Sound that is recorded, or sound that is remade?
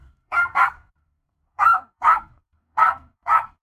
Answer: remade